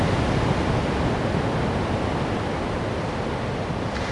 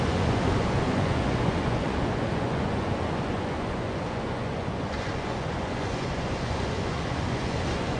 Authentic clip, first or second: first